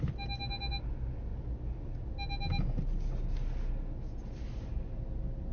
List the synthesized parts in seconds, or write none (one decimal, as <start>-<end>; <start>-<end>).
none